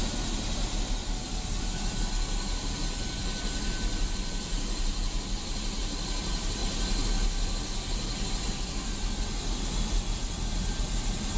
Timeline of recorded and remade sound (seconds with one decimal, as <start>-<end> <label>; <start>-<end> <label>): 0.0-3.2 recorded; 3.2-6.6 remade; 6.6-10.8 recorded; 10.8-11.4 remade